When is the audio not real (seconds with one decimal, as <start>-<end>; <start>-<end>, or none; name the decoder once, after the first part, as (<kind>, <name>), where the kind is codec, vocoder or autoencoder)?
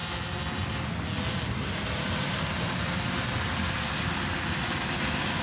none